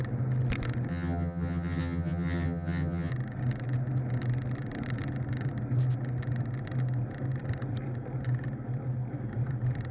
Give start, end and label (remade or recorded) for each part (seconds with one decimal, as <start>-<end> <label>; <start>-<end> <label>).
0.0-0.9 recorded; 0.9-3.1 remade; 3.1-9.9 recorded